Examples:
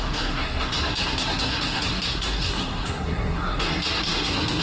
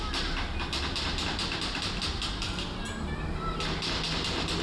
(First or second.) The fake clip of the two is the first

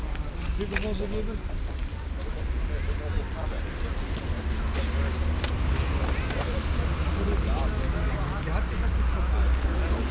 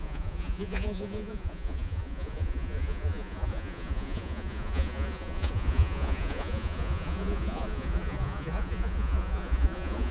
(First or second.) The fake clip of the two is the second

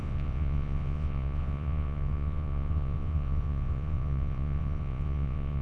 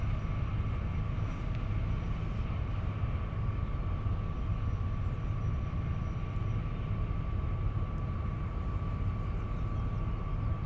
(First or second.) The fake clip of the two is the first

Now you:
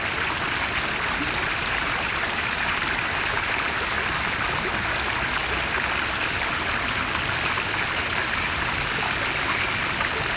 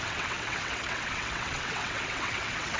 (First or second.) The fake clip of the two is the second